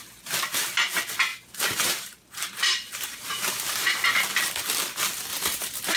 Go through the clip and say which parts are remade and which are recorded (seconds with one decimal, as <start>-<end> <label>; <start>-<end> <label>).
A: 0.0-1.3 recorded; 1.3-4.1 remade; 4.1-5.3 recorded; 5.3-6.0 remade